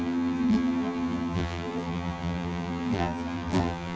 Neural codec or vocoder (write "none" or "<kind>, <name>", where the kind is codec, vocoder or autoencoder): vocoder, BigVGAN v2